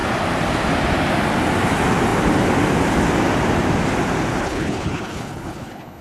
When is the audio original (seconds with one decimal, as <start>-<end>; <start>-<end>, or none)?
0.0-4.4